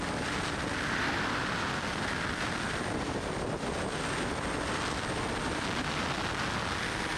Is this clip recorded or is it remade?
recorded